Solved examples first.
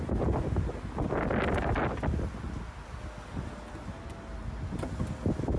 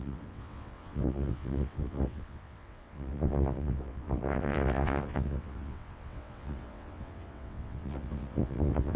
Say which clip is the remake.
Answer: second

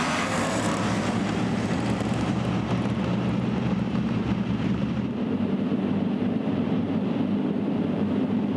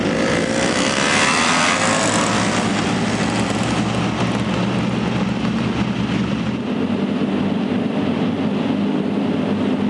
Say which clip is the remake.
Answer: first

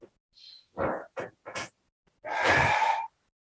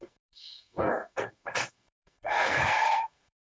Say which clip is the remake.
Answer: second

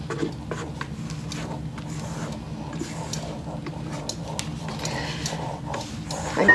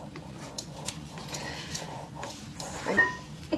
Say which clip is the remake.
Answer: second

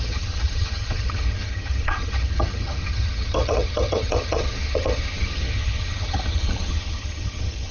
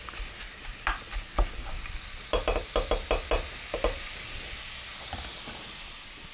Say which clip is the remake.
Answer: first